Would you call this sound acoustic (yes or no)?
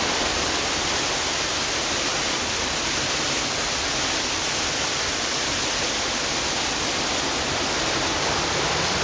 yes